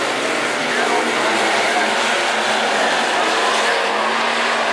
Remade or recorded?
recorded